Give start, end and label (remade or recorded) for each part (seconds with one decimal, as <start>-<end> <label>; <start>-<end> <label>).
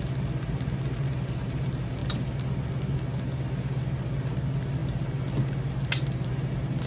0.0-6.9 recorded